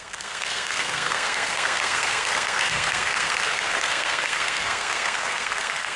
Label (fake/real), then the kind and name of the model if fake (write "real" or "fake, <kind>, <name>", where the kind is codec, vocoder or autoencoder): fake, codec, SNAC